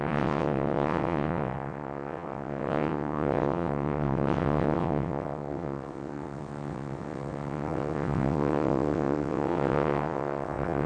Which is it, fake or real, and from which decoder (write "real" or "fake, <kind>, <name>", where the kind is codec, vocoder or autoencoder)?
fake, vocoder, WaveNeXt